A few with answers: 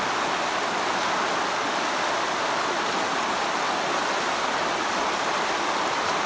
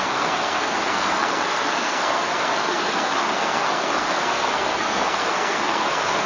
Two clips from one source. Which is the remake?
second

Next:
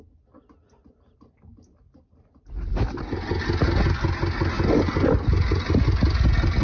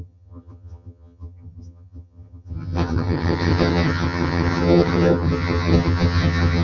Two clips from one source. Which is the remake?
second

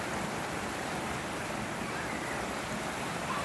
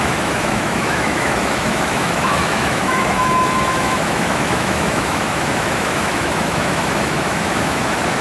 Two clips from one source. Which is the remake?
second